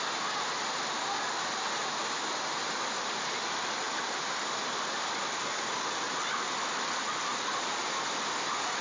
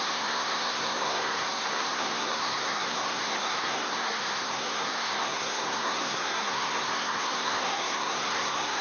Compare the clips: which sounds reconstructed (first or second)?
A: second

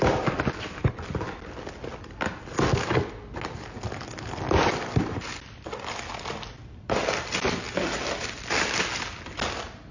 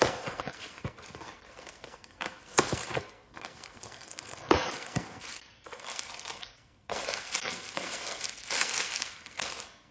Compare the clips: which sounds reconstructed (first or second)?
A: second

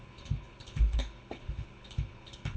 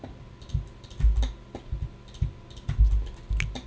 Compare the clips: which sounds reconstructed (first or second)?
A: first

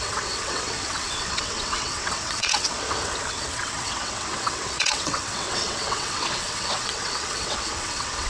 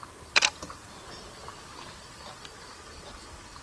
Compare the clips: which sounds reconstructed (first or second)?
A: first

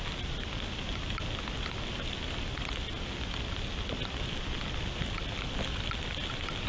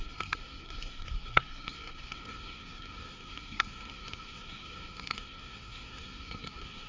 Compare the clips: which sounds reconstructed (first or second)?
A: second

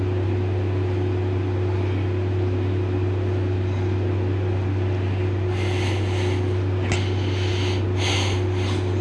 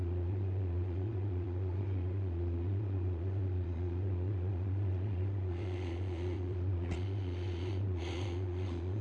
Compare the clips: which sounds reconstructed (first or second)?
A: second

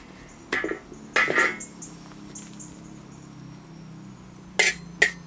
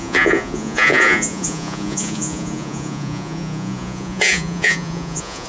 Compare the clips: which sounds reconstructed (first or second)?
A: second